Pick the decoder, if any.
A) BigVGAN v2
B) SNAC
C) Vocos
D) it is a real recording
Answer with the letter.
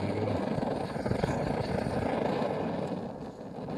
D